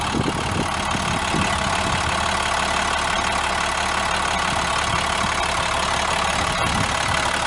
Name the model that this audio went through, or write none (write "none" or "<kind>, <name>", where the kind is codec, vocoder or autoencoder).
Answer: none